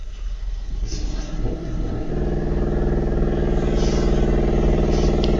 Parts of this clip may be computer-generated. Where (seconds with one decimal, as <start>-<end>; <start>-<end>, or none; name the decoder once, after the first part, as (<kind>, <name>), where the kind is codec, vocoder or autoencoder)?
0.0-2.1 (codec, SNAC)